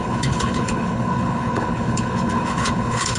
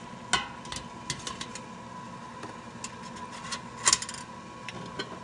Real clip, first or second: second